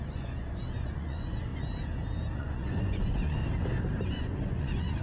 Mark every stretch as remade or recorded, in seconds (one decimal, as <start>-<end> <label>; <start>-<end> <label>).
0.0-1.5 remade; 1.5-2.4 recorded; 2.4-3.4 remade; 3.4-4.1 recorded; 4.1-5.0 remade